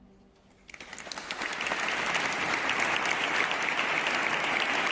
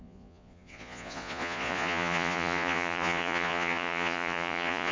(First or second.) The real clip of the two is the first